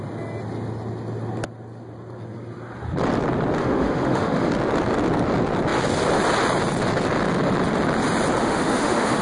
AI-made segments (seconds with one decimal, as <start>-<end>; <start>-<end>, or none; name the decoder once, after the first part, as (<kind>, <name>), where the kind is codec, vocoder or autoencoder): 3.6-4.5 (autoencoder, DAC-VAE); 8.4-9.2